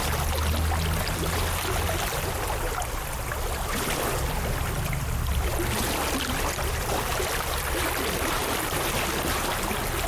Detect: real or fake real